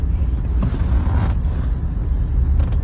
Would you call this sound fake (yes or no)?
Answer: no